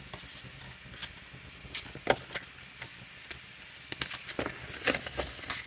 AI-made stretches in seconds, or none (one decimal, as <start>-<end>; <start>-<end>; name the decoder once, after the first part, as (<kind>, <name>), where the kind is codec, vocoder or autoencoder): none